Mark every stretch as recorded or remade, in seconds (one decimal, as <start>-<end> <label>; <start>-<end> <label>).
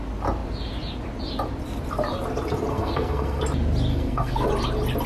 0.0-2.7 recorded; 2.7-3.4 remade; 3.4-3.9 recorded; 3.9-4.5 remade; 4.5-5.1 recorded